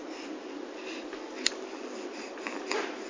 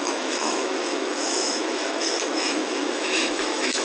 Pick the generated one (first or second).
second